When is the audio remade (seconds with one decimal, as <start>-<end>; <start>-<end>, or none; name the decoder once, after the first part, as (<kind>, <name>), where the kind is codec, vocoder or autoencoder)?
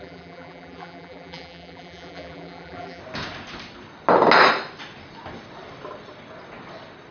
0.0-3.0 (vocoder, BigVGAN v2)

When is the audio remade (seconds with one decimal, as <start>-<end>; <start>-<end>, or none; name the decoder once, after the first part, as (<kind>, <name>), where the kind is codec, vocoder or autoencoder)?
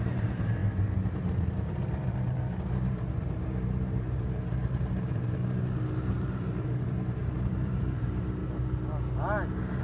0.0-0.6 (vocoder, BigVGAN v2); 2.1-5.4; 6.1-8.4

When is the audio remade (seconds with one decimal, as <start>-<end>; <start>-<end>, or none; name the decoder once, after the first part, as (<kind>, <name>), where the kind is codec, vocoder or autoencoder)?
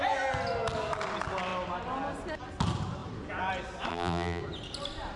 3.9-4.4 (vocoder, BigVGAN v2)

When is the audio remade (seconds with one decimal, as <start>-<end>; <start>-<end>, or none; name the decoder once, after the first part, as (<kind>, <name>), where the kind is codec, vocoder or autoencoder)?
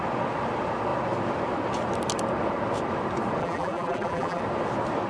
3.4-4.4 (vocoder, BigVGAN v2)